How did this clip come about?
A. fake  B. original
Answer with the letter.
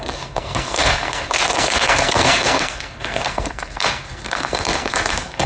A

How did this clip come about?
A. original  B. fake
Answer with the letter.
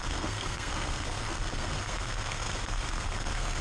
B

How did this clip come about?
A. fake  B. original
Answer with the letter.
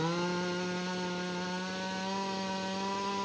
B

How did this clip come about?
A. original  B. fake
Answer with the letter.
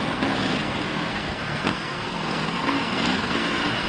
B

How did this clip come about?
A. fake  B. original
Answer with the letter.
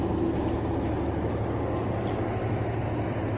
B